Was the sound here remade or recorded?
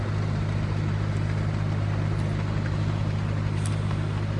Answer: recorded